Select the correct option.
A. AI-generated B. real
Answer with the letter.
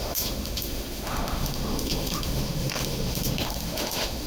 A